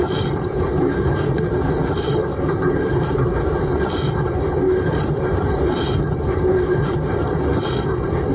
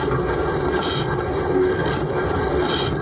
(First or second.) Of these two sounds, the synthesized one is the first